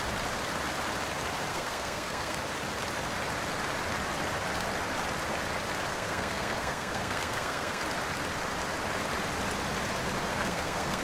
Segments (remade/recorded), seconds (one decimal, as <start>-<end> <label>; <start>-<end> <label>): 0.0-1.5 recorded; 1.5-2.4 remade; 2.4-5.9 recorded; 5.9-7.8 remade; 7.8-10.3 recorded; 10.3-11.0 remade